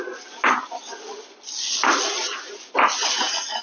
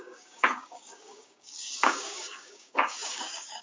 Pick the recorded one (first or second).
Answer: first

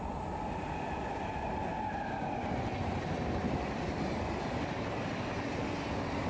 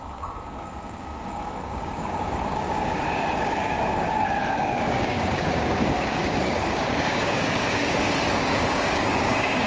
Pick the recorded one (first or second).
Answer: first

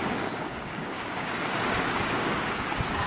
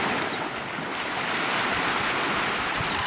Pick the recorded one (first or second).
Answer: second